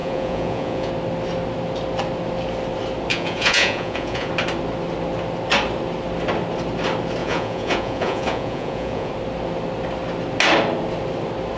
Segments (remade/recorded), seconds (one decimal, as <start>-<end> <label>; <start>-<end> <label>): 0.0-0.9 remade; 0.9-3.1 recorded; 3.1-4.3 remade; 4.3-7.2 recorded; 7.2-9.1 remade; 9.1-11.6 recorded